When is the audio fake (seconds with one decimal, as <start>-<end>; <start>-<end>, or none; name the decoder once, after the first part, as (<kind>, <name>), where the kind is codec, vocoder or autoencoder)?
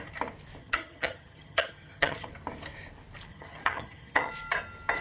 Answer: 0.6-2.3 (vocoder, HiFi-GAN); 3.3-4.3